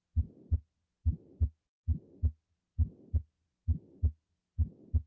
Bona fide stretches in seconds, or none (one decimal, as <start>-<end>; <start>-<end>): 0.0-1.7